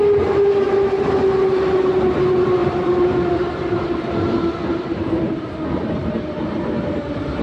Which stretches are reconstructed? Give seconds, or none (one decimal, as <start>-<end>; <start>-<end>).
2.6-4.0